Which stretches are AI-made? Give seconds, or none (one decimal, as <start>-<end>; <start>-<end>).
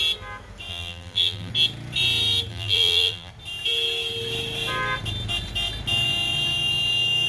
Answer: 0.7-1.5; 2.5-3.3